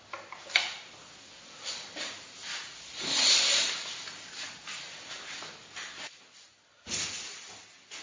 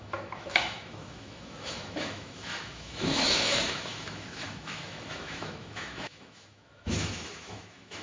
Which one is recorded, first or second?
first